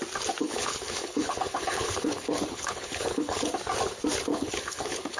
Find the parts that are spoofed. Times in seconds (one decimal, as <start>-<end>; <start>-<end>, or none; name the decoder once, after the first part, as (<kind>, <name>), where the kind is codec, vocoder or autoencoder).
0.4-3.5 (codec, HILCodec); 4.3-5.2